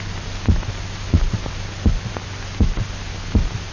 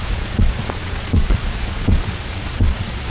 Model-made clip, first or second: second